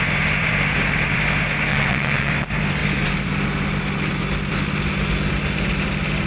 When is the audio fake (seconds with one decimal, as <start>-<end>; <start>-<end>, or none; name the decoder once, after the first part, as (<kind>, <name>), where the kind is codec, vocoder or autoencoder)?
1.7-2.3 (vocoder, WaveNeXt)